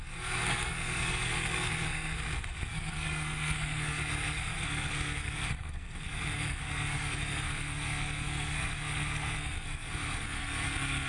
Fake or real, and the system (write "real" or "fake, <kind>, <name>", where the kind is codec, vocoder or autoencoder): fake, codec, SNAC